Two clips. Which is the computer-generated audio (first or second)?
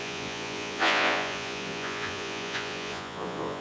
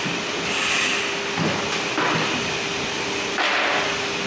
first